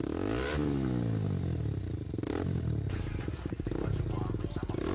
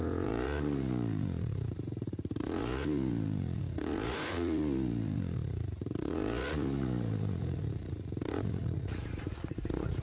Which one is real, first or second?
first